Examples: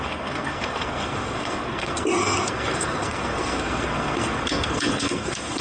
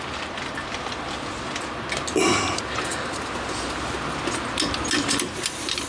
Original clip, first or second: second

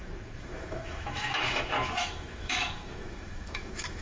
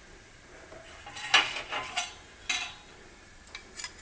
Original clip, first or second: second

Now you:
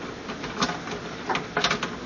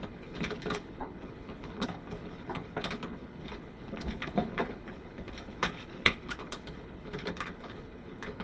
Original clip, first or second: first